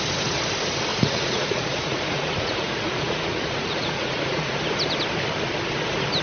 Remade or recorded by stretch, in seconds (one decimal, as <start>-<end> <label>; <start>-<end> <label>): 0.0-0.9 recorded; 0.9-4.6 remade; 4.6-6.2 recorded

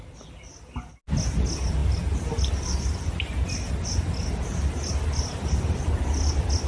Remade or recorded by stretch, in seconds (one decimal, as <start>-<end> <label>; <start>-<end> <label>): 0.0-6.7 recorded